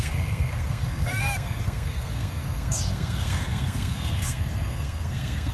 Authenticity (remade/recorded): remade